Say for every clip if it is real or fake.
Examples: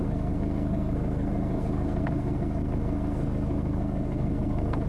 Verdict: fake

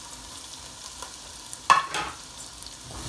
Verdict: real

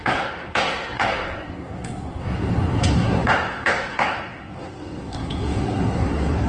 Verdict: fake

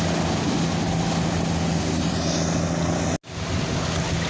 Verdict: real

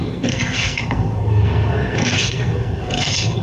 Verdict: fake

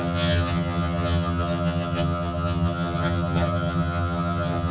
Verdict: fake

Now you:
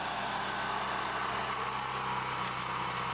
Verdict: real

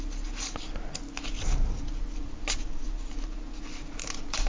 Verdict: real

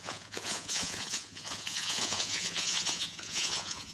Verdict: fake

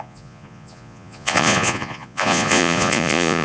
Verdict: fake